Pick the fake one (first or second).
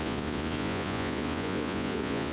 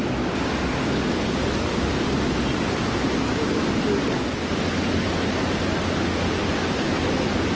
first